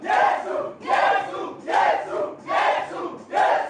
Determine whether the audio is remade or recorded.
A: remade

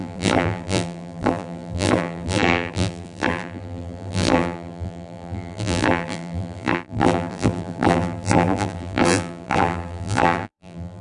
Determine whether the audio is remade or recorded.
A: remade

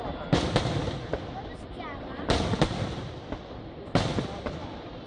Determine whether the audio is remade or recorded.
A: recorded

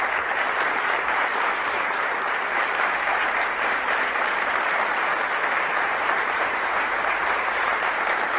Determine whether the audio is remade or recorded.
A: remade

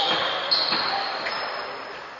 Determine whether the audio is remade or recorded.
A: remade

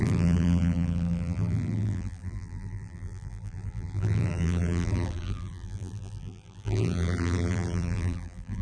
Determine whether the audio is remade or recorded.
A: remade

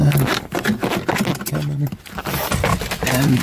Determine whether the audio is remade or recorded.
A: recorded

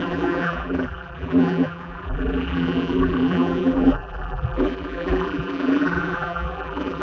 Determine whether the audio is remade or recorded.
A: remade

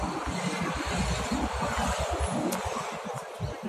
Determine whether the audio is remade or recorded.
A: recorded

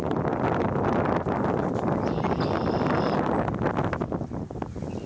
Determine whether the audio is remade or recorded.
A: recorded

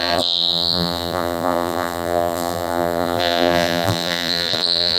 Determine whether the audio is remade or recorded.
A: remade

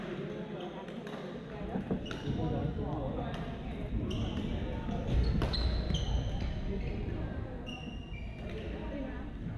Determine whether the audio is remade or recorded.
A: recorded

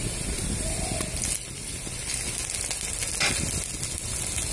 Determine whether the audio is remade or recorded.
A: recorded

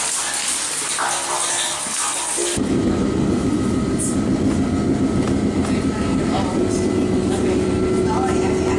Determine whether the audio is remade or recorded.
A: recorded